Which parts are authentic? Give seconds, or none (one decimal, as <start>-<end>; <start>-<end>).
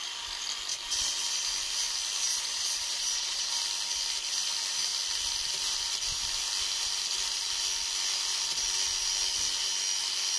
0.0-2.3; 3.5-10.4